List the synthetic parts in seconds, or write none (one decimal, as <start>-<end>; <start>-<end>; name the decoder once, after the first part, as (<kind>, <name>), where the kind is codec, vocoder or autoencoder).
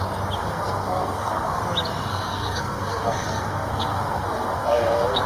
0.4-1.6 (codec, SNAC); 2.1-5.3